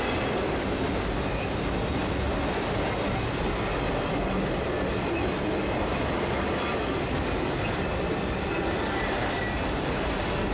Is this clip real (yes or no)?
yes